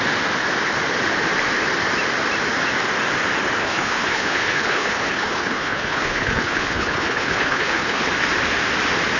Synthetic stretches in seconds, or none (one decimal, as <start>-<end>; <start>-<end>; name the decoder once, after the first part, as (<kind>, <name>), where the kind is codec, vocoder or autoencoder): 3.6-8.1 (codec, HILCodec)